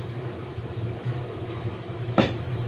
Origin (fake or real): fake